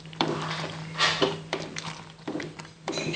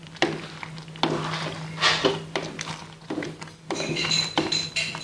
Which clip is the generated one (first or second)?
first